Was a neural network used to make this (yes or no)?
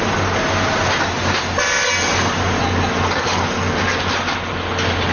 no